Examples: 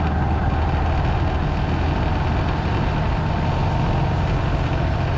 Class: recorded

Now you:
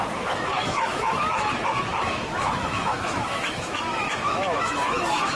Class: remade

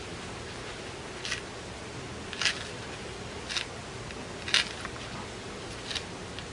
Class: recorded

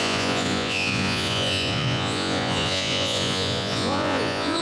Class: remade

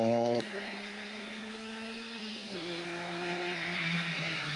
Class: remade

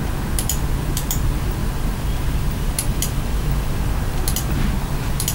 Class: recorded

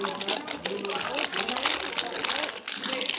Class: recorded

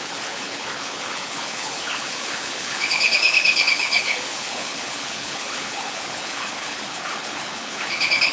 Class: remade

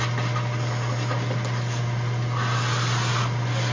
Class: recorded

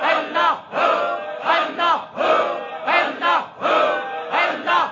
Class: recorded